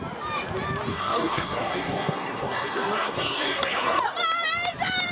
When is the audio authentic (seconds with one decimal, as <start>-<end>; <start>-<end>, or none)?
0.0-0.9; 4.0-5.1